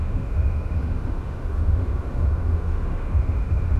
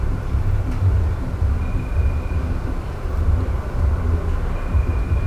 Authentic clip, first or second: second